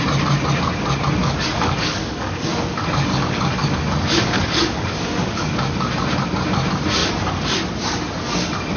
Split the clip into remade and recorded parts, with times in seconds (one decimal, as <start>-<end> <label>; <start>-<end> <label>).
0.0-1.2 recorded; 1.2-5.9 remade; 5.9-8.8 recorded